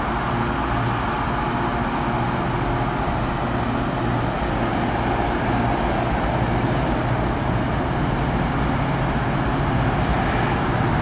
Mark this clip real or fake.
real